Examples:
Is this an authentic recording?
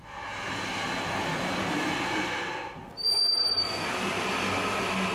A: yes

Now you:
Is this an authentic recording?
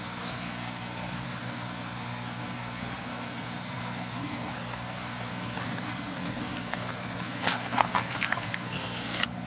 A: no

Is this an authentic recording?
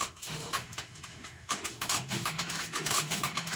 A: no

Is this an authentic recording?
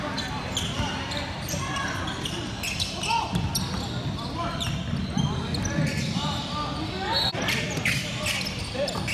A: yes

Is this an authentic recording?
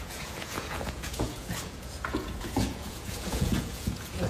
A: no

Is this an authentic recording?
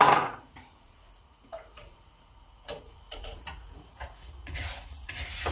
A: no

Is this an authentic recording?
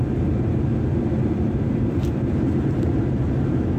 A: no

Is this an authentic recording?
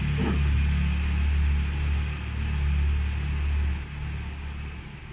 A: yes